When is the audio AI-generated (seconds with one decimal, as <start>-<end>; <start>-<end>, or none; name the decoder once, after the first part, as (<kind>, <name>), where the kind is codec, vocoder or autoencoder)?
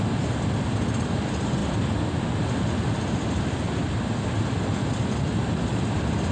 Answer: none